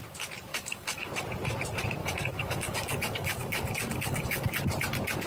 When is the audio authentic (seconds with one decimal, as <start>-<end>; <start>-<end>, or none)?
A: 0.0-0.5; 1.1-2.0; 4.5-5.3